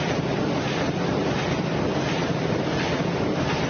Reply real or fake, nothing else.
fake